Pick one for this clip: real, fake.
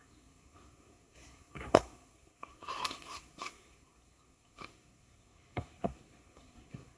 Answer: fake